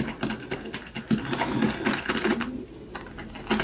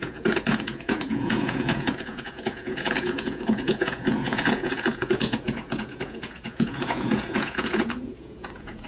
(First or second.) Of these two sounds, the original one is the first